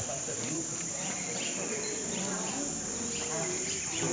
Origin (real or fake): real